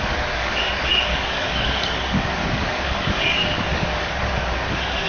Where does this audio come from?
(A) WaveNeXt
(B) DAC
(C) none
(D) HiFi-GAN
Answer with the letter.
B